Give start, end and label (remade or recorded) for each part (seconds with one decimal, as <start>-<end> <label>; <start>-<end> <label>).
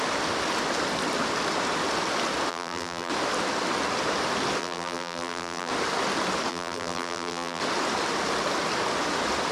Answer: 0.0-2.5 recorded; 2.5-3.1 remade; 3.1-4.6 recorded; 4.6-5.7 remade; 5.7-6.5 recorded; 6.5-7.6 remade; 7.6-9.5 recorded